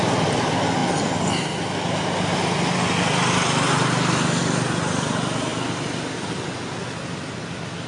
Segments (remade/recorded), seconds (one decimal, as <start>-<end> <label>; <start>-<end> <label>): 0.0-7.9 recorded